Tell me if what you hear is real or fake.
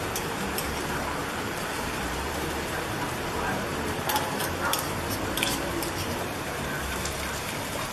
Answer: fake